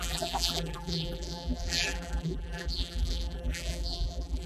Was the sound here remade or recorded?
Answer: remade